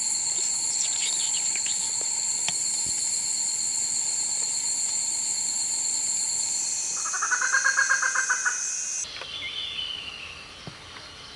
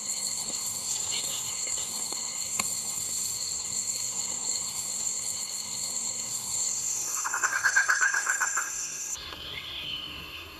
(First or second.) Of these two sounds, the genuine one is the first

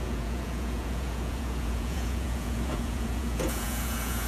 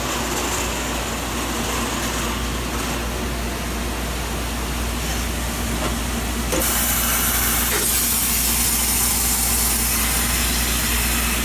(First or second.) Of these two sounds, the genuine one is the second